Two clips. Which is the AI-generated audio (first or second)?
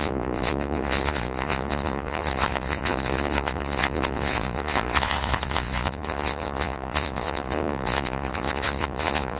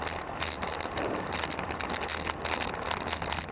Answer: first